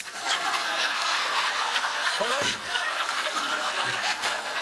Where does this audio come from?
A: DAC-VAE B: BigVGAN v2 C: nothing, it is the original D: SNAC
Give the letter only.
D